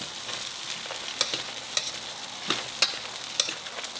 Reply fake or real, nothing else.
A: real